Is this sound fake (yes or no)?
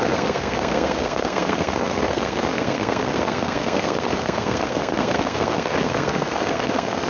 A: yes